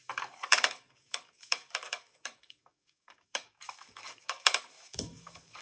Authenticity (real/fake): fake